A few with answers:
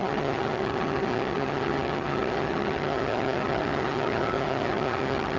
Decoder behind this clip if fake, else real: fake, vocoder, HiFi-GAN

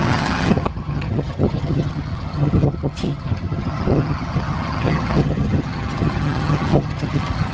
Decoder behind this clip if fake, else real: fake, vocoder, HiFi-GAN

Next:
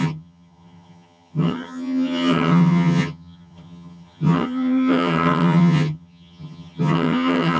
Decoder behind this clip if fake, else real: fake, vocoder, HiFi-GAN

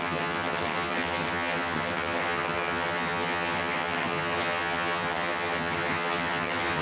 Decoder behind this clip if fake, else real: fake, vocoder, HiFi-GAN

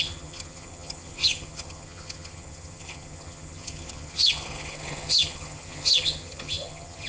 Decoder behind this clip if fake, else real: fake, vocoder, HiFi-GAN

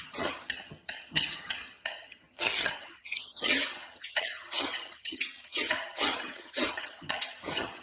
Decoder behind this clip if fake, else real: fake, vocoder, HiFi-GAN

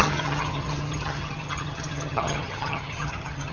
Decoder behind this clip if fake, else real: fake, vocoder, HiFi-GAN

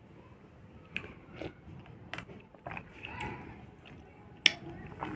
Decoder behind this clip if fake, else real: real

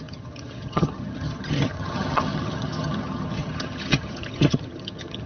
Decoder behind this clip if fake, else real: fake, vocoder, HiFi-GAN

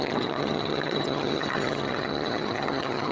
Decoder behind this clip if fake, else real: fake, vocoder, HiFi-GAN